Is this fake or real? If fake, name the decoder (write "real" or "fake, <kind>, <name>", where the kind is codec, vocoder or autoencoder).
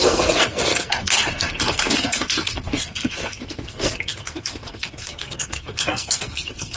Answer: fake, codec, SNAC